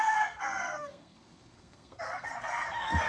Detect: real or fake fake